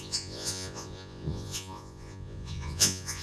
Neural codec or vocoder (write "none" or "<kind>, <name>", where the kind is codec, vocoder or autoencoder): vocoder, Vocos